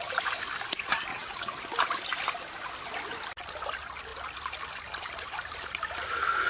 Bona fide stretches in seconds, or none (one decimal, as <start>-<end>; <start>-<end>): 0.0-1.1; 1.6-6.5